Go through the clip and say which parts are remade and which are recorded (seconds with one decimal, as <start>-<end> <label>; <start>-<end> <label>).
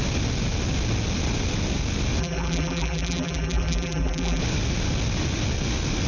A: 0.0-2.2 recorded; 2.2-4.4 remade; 4.4-6.1 recorded